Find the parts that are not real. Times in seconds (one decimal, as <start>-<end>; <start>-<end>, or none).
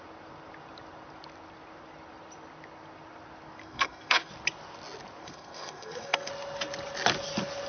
3.6-4.3; 5.2-6.3